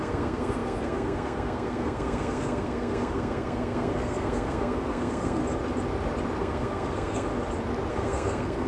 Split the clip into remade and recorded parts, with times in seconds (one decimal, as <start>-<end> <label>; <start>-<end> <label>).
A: 0.0-5.4 remade; 5.4-6.4 recorded; 6.4-7.3 remade; 7.3-7.9 recorded; 7.9-8.7 remade